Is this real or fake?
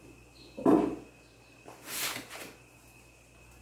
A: real